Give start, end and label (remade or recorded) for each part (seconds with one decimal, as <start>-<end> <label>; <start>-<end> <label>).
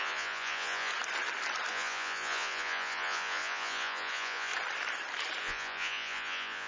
0.0-0.9 remade; 0.9-1.7 recorded; 1.7-4.5 remade; 4.5-5.4 recorded; 5.4-6.7 remade